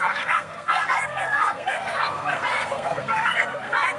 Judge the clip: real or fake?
fake